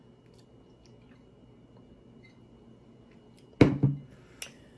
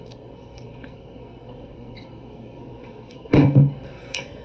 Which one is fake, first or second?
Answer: second